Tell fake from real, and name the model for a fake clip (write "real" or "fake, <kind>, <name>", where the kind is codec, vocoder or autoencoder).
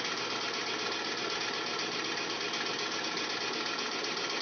real